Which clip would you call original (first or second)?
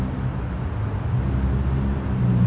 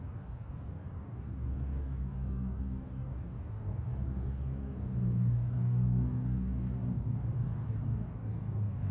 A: first